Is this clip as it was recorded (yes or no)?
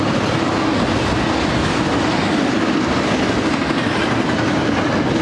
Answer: yes